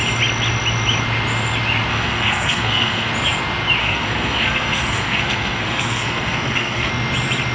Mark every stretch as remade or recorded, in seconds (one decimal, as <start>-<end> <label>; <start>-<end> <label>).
0.0-1.9 recorded; 1.9-3.1 remade; 3.1-3.8 recorded; 3.8-6.9 remade; 6.9-7.5 recorded